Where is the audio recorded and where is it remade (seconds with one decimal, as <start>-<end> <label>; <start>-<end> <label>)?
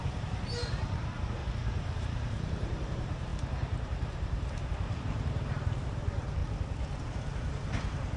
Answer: 0.0-1.4 remade; 1.4-2.0 recorded; 2.0-6.4 remade; 6.4-7.0 recorded; 7.0-8.2 remade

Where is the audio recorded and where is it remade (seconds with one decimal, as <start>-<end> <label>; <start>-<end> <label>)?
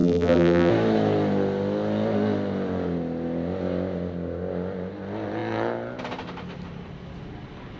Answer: 0.0-0.7 remade; 0.7-7.8 recorded